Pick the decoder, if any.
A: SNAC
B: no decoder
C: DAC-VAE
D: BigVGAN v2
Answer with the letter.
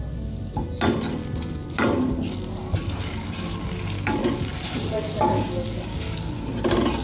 B